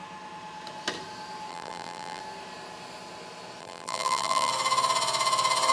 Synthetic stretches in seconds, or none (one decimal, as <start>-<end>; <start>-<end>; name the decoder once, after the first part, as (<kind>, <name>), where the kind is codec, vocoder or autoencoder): 1.5-2.2 (vocoder, BigVGAN v2); 3.6-4.5